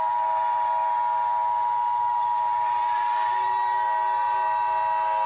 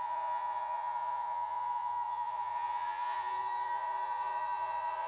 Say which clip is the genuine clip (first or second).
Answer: first